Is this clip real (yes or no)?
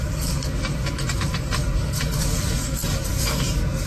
no